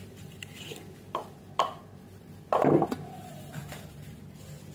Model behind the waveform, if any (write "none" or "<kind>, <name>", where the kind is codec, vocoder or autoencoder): none